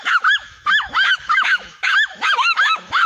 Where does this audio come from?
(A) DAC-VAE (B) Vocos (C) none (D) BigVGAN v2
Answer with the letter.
A